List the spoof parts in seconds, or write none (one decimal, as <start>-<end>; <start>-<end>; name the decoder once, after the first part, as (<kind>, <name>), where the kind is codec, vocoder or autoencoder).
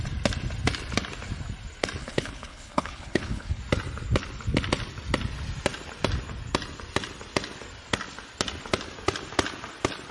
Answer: 2.0-3.6 (codec, HILCodec)